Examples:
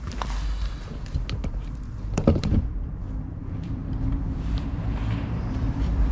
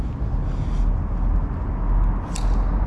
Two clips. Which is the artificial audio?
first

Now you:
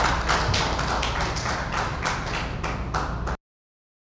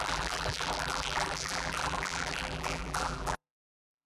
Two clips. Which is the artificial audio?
second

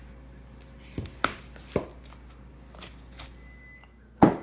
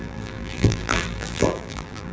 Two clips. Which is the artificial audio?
second